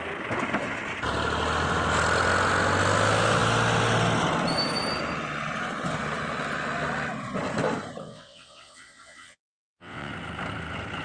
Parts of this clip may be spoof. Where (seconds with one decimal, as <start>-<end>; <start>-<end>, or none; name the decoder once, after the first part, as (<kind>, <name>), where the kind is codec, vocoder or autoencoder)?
8.0-10.1 (vocoder, WaveNeXt)